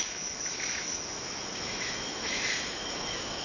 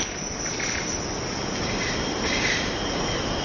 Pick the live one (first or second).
second